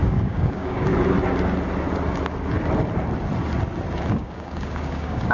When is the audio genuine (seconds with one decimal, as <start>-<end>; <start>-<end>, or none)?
0.9-4.1